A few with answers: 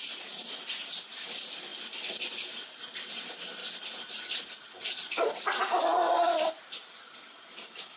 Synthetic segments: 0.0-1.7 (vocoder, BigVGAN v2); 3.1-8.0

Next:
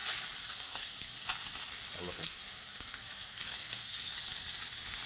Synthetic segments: 0.5-1.1 (codec, SNAC); 2.1-4.1

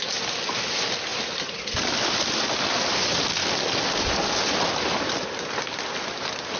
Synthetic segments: none

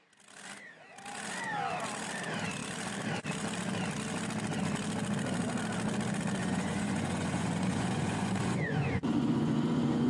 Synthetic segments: 6.4-10.1 (vocoder, Vocos)

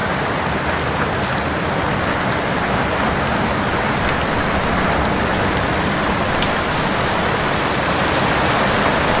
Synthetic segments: none

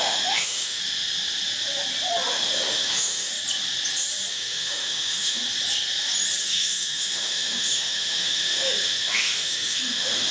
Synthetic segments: 0.0-0.8 (autoencoder, DAC-VAE); 2.3-3.3; 4.3-5.4; 6.4-10.3

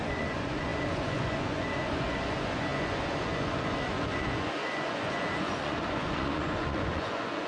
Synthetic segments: 0.0-7.5 (vocoder, Vocos)

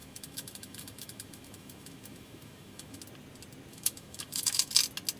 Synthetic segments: 0.0-3.0 (autoencoder, DAC-VAE); 3.7-4.7